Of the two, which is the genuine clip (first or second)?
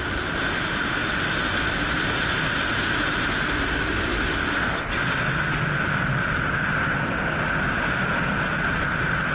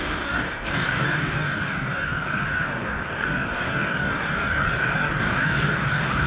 first